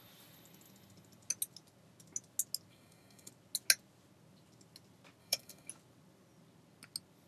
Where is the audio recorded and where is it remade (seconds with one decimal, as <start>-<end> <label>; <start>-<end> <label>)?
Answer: 0.0-2.7 recorded; 2.7-3.3 remade; 3.3-5.2 recorded; 5.2-5.7 remade; 5.7-7.3 recorded